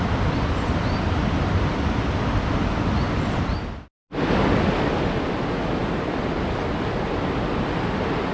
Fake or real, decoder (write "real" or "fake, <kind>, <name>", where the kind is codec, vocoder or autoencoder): real